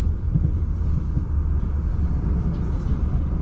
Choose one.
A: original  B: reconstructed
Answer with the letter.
A